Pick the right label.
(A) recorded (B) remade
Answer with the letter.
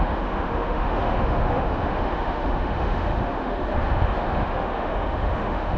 B